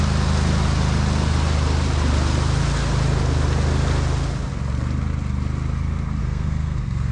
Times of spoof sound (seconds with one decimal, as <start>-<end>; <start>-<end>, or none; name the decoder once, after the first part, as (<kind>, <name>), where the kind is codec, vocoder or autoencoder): 6.2-7.1 (codec, SNAC)